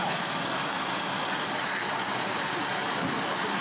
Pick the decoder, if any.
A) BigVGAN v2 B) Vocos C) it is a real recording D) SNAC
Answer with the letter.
C